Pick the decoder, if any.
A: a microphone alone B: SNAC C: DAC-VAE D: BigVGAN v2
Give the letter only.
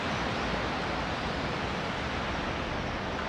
A